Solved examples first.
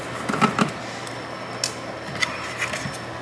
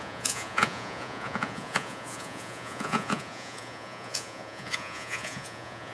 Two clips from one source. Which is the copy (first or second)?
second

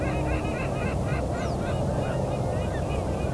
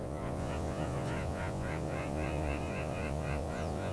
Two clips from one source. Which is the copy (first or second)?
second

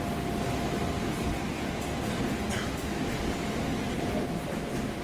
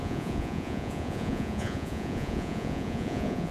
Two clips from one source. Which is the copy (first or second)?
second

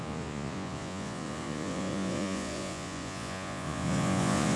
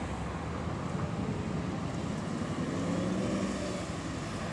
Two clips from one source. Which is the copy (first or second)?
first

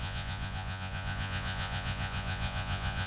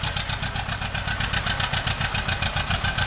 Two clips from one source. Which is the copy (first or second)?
first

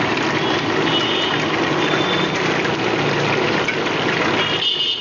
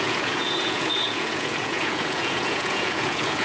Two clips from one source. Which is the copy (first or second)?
second